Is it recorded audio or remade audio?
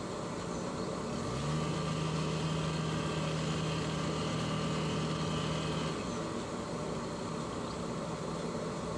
recorded